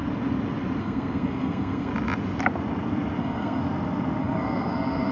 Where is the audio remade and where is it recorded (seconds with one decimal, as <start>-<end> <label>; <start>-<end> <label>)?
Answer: 0.0-0.8 recorded; 0.8-1.9 remade; 1.9-3.2 recorded; 3.2-3.6 remade; 3.6-4.2 recorded; 4.2-5.1 remade